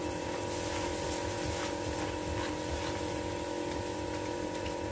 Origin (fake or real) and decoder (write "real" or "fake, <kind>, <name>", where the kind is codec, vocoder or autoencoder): real